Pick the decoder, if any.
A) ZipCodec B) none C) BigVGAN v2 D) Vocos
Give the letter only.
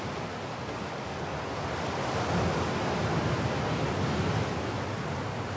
B